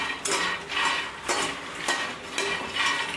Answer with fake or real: real